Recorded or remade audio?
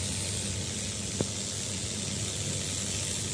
recorded